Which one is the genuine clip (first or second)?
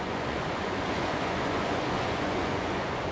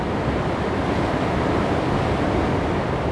second